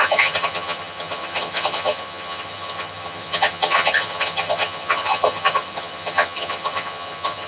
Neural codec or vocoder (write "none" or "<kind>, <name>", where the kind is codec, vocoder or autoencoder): vocoder, HiFi-GAN